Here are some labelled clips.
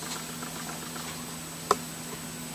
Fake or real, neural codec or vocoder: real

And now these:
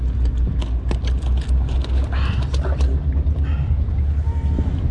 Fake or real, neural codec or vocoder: real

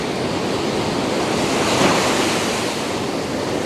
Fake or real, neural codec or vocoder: real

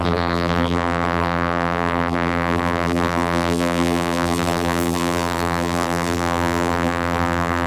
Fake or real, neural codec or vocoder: fake, vocoder, BigVGAN v2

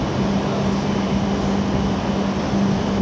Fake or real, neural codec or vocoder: real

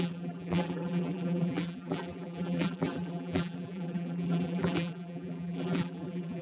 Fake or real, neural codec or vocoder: fake, vocoder, BigVGAN v2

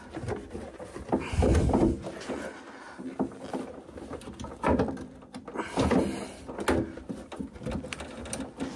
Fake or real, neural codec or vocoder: real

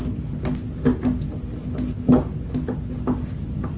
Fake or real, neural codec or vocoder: real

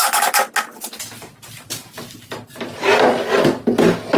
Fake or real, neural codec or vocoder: real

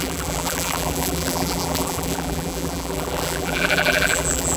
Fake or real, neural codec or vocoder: fake, vocoder, BigVGAN v2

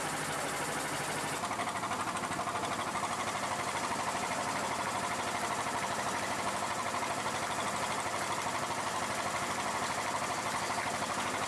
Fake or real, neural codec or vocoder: real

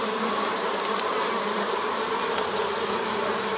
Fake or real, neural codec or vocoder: fake, vocoder, BigVGAN v2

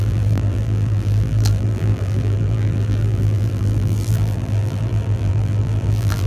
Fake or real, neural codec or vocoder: fake, vocoder, BigVGAN v2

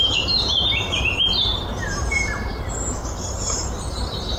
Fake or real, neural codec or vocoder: fake, vocoder, BigVGAN v2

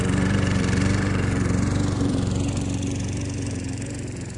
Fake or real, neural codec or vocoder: fake, vocoder, BigVGAN v2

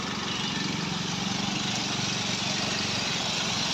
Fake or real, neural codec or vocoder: real